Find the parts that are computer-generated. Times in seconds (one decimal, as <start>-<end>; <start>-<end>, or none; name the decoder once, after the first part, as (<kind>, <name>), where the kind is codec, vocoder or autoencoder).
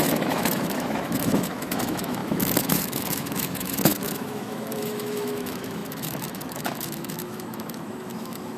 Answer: 0.0-8.6 (autoencoder, DAC-VAE)